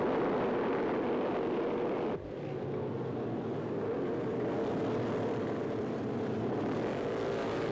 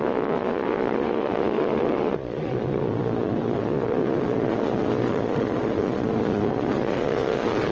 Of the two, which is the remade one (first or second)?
second